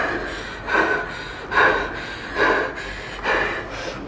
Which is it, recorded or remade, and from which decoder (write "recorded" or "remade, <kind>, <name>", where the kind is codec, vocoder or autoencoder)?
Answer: recorded